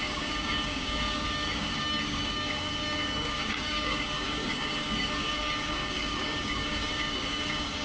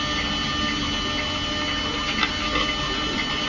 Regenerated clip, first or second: first